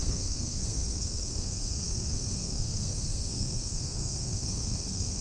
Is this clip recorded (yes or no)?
no